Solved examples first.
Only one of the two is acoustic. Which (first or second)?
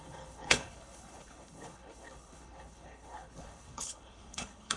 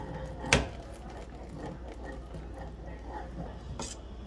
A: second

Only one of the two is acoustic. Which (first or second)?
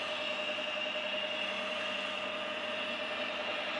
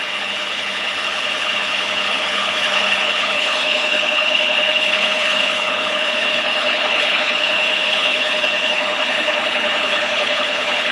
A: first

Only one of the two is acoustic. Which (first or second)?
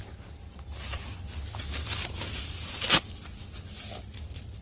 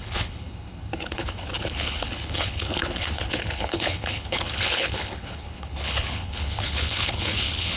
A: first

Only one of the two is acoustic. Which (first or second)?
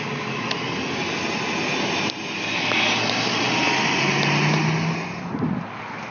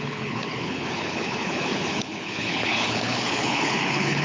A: first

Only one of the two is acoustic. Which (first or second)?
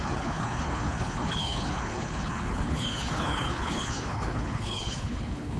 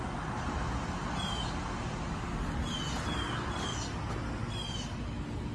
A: second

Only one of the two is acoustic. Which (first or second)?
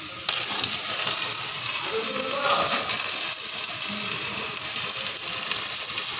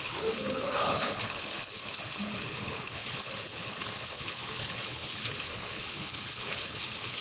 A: first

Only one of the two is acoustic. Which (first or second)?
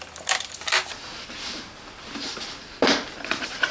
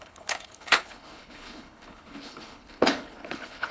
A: first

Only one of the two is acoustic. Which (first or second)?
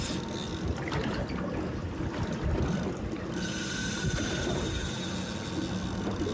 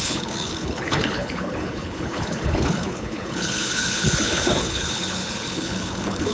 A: first